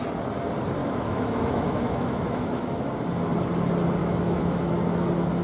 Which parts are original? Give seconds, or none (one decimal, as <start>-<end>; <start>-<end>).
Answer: 0.0-0.8; 2.8-4.0; 4.7-5.4